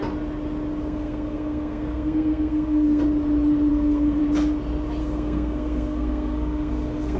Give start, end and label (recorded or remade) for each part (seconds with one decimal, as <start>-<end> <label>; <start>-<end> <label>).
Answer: 0.0-0.8 recorded; 0.8-3.0 remade; 3.0-3.7 recorded; 3.7-4.2 remade; 4.2-5.0 recorded; 5.0-7.2 remade